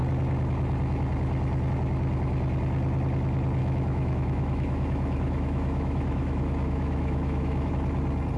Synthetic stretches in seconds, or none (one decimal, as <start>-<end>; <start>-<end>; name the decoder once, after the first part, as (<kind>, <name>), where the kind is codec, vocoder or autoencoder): 3.6-7.7 (autoencoder, DAC-VAE)